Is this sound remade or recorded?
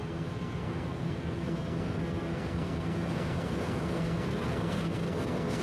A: remade